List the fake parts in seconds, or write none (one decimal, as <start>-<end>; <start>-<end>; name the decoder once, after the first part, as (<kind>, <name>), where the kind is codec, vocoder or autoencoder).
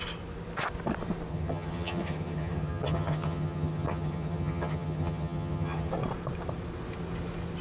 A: 1.3-5.9 (vocoder, HiFi-GAN)